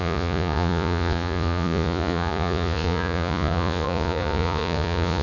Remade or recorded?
remade